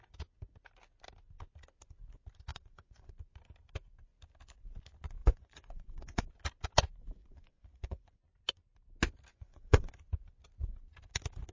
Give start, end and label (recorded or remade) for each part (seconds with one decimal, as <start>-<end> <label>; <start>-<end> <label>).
0.0-2.5 recorded; 2.5-3.1 remade; 3.1-5.2 recorded; 5.2-6.2 remade; 6.2-7.2 recorded; 7.2-8.2 remade; 8.2-9.3 recorded; 9.3-9.9 remade; 9.9-11.5 recorded